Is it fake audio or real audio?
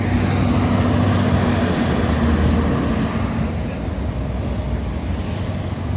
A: real